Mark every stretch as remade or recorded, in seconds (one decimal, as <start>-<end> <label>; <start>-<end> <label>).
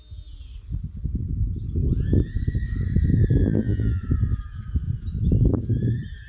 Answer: 0.0-3.4 recorded; 3.4-4.0 remade; 4.0-6.3 recorded